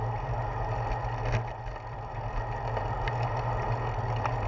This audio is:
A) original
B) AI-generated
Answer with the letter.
A